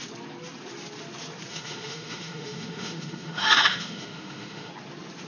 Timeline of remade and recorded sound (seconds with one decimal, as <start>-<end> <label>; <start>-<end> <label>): 0.0-1.5 recorded; 1.5-4.7 remade; 4.7-5.3 recorded